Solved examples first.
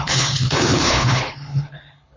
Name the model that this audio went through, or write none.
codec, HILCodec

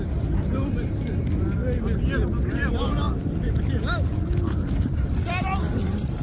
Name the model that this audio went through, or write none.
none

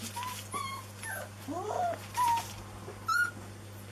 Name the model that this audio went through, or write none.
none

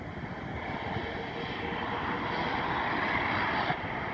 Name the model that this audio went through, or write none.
none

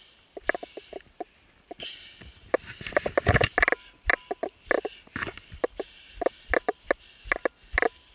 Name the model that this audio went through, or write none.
none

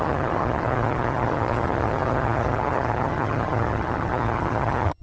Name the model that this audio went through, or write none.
vocoder, HiFi-GAN